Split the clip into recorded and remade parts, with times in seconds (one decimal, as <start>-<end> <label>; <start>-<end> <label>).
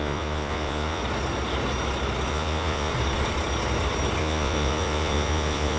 0.0-1.0 remade; 1.0-2.3 recorded; 2.3-2.9 remade; 2.9-4.2 recorded; 4.2-5.8 remade